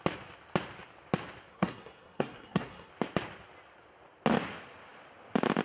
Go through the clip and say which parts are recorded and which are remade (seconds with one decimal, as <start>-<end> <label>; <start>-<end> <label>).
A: 0.0-1.5 recorded; 1.5-2.9 remade; 2.9-5.6 recorded